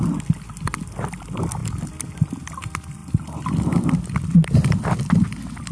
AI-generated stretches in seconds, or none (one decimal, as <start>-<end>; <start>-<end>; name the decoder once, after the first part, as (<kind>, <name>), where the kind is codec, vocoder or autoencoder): none